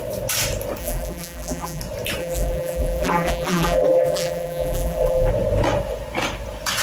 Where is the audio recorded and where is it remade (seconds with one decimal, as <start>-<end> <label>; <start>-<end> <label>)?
0.0-0.8 recorded; 0.8-1.8 remade; 1.8-2.2 recorded; 2.2-5.3 remade; 5.3-6.8 recorded